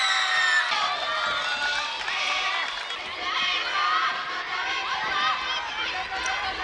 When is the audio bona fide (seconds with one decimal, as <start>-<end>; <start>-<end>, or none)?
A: 0.0-6.6